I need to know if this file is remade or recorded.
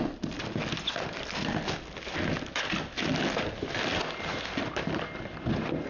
recorded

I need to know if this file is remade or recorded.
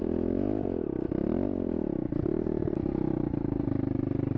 recorded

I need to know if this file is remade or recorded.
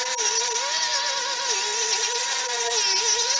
recorded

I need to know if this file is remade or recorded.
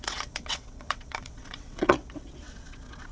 remade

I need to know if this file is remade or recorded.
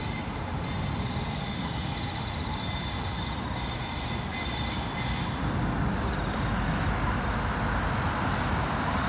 recorded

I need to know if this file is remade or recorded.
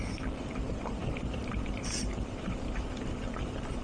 remade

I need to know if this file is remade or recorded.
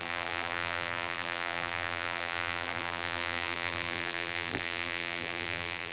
remade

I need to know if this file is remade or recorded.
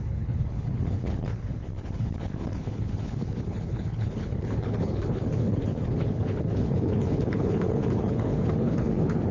remade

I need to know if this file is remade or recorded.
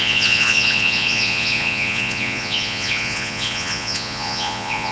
remade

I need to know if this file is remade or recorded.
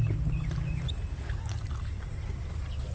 recorded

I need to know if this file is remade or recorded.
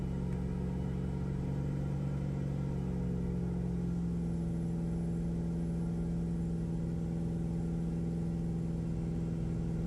recorded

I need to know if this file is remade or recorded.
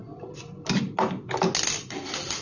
recorded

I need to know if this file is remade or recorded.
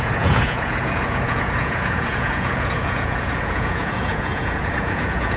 remade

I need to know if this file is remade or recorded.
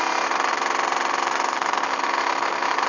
recorded